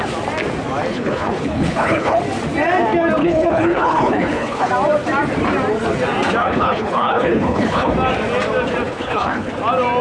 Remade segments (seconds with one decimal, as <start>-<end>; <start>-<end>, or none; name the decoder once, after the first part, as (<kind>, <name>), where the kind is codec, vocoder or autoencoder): 0.9-2.2 (codec, HILCodec); 3.2-4.7; 6.4-7.9; 8.9-9.5